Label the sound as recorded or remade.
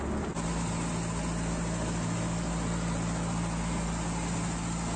recorded